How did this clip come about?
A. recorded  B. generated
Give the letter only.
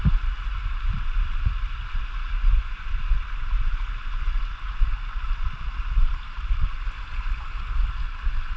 A